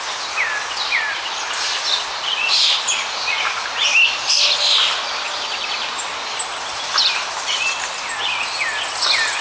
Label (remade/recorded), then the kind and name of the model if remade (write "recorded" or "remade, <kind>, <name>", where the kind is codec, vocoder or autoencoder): recorded